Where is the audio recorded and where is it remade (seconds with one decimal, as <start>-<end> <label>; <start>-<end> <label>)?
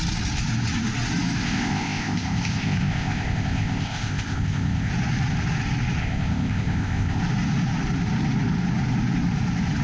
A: 0.0-1.4 recorded; 1.4-4.9 remade; 4.9-6.0 recorded; 6.0-7.2 remade; 7.2-9.8 recorded